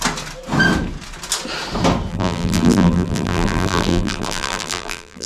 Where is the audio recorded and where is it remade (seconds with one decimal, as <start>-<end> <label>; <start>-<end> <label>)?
0.0-2.1 recorded; 2.1-5.3 remade